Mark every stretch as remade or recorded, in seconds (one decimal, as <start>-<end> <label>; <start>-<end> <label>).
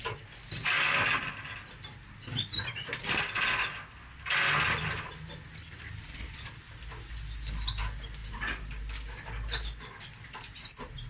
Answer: 0.0-11.1 recorded